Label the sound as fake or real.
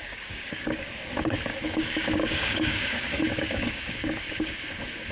fake